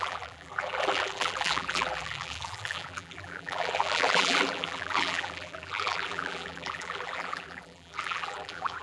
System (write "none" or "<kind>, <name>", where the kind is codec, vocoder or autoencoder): vocoder, BigVGAN v2